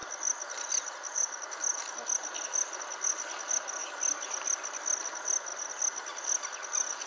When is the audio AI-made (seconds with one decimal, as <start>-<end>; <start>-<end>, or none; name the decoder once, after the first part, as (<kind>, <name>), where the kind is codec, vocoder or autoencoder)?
none